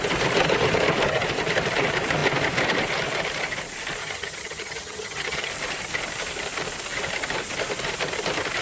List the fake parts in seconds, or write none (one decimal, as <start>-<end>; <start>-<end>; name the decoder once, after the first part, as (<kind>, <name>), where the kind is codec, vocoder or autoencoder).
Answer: 4.0-5.5 (vocoder, HiFi-GAN)